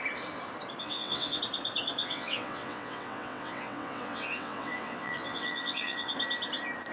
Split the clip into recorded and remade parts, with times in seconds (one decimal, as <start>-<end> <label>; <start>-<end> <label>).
0.0-0.8 recorded; 0.8-1.4 remade; 1.4-2.0 recorded; 2.0-6.1 remade; 6.1-6.9 recorded